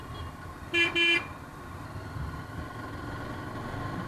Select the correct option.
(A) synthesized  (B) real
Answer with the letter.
B